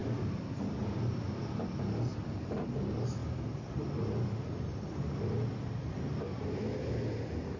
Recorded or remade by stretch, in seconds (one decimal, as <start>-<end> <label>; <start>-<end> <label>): 0.0-1.0 remade; 1.0-2.1 recorded; 2.1-2.7 remade; 2.7-3.2 recorded; 3.2-5.9 remade; 5.9-7.6 recorded